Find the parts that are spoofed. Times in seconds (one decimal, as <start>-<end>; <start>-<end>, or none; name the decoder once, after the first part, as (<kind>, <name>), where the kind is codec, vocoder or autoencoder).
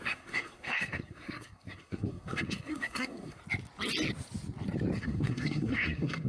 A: 0.0-3.4 (codec, SNAC); 5.0-6.3